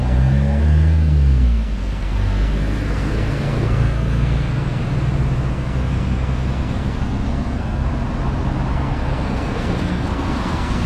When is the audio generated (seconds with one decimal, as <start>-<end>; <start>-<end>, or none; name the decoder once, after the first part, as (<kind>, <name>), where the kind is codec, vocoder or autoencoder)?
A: 0.0-4.8 (codec, SNAC); 5.5-7.9; 8.7-10.9